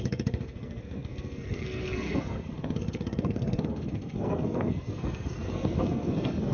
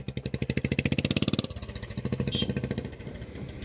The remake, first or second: first